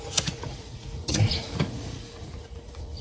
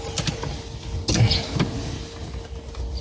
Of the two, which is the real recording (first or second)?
second